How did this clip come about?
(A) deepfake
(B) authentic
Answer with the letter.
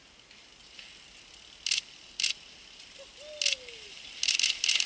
B